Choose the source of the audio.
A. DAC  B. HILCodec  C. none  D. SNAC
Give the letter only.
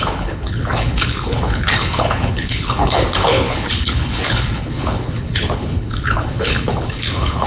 B